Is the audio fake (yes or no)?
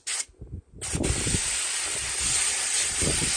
no